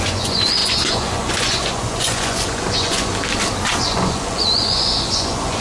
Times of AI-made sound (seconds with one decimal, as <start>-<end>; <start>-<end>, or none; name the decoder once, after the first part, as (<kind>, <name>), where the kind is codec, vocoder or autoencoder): 0.0-3.1 (vocoder, Vocos); 3.8-5.6